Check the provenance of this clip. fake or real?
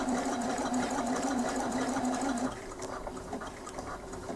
fake